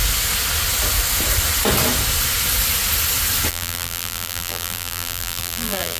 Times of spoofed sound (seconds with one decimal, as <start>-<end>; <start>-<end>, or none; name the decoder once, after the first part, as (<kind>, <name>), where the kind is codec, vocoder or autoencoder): 3.5-6.0 (vocoder, BigVGAN v2)